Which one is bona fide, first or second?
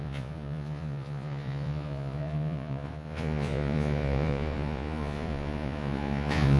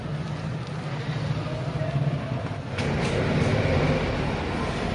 second